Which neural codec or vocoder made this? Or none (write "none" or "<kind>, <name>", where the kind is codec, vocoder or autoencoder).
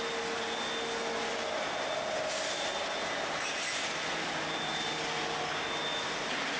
none